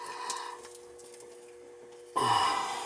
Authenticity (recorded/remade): recorded